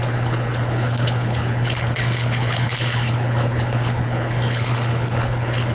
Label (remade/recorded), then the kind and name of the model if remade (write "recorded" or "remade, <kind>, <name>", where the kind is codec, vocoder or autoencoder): remade, codec, HILCodec